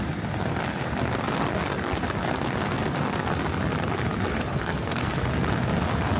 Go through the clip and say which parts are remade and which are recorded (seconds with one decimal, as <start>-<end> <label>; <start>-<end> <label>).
0.0-4.5 recorded; 4.5-5.1 remade; 5.1-6.2 recorded